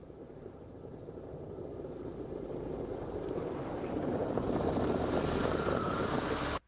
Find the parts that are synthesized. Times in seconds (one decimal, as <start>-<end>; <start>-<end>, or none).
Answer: 1.0-5.0; 5.7-6.7